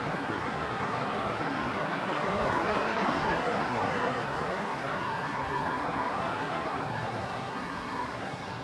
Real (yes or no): no